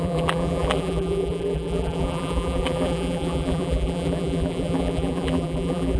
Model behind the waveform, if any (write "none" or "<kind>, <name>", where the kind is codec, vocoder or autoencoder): vocoder, BigVGAN v2